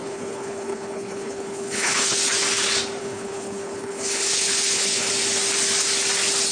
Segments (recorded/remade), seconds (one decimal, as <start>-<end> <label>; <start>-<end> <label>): 0.0-2.2 remade; 2.2-3.0 recorded; 3.0-5.1 remade; 5.1-6.5 recorded